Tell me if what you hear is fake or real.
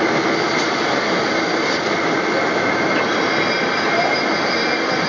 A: real